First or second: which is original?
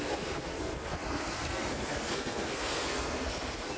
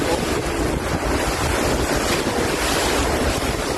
second